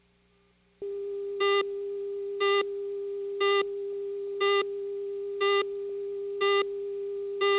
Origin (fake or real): real